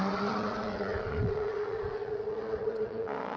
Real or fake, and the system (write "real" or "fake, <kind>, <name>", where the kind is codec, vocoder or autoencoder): fake, vocoder, Vocos